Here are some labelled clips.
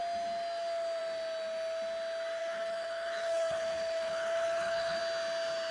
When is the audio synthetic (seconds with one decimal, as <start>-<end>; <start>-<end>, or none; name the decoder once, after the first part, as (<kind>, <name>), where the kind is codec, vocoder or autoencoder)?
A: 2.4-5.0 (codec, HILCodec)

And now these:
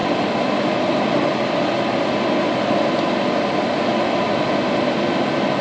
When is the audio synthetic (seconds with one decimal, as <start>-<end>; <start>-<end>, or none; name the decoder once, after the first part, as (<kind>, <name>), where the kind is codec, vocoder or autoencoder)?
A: none

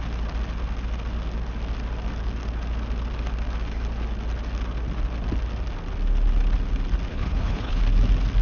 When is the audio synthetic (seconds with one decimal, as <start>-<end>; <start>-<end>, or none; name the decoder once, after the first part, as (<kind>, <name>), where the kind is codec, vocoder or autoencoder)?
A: 7.1-7.8 (codec, HILCodec)